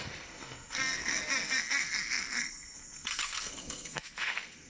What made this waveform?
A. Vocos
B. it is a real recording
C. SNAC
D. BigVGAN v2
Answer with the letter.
C